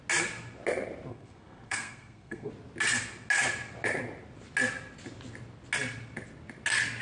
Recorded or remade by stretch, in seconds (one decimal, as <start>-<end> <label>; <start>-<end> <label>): 0.0-1.1 recorded; 1.1-2.5 remade; 2.5-7.0 recorded